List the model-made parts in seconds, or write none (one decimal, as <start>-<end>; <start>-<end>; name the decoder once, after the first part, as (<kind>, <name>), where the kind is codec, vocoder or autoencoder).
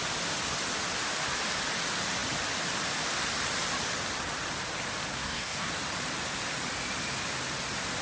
5.1-5.7 (codec, SNAC)